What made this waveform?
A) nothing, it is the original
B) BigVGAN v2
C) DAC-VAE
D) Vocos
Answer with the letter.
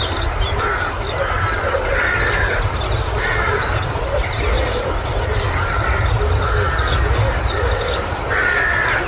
A